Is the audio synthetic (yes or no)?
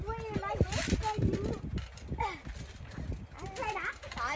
no